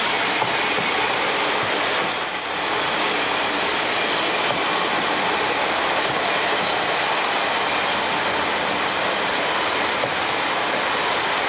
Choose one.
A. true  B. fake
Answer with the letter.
A